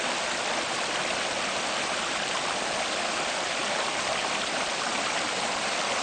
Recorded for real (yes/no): no